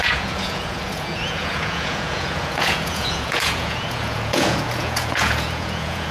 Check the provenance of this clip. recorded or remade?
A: remade